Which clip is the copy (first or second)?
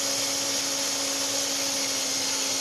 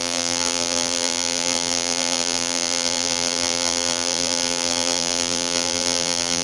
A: second